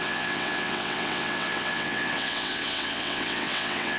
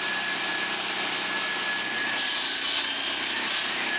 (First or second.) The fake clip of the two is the first